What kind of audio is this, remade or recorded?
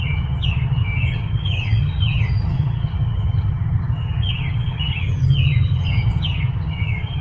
remade